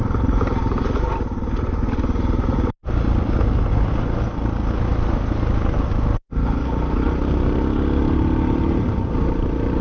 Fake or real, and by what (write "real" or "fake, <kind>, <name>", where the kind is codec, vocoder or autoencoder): real